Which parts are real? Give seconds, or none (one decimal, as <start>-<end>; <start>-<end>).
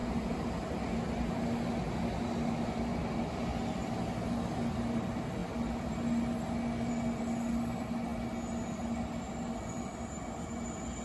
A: 0.0-11.0